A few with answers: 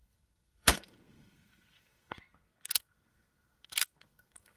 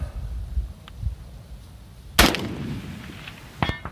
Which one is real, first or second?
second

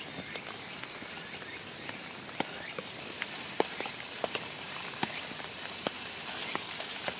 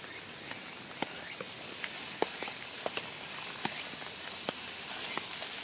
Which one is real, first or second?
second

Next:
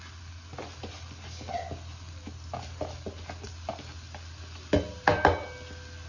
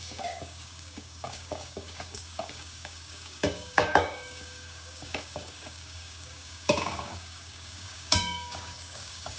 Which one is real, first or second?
first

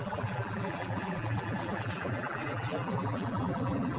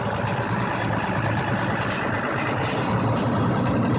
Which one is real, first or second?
second